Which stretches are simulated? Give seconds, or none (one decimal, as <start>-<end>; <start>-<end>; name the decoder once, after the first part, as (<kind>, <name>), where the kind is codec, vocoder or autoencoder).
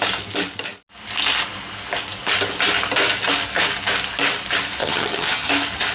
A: 4.8-5.5 (vocoder, HiFi-GAN)